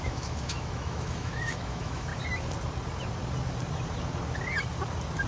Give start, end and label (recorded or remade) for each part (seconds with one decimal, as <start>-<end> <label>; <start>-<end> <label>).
0.0-2.1 remade; 2.1-5.3 recorded